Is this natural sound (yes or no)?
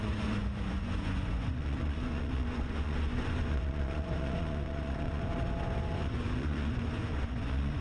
no